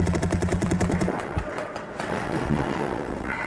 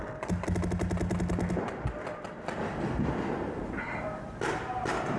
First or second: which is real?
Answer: second